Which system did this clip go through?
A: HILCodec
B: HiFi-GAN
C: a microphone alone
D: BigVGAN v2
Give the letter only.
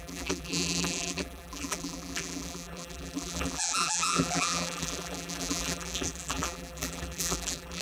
D